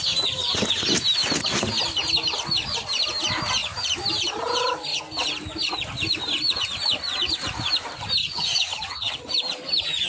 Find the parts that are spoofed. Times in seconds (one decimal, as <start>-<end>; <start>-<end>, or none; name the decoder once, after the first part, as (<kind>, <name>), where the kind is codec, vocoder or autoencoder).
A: 8.2-9.3 (vocoder, HiFi-GAN)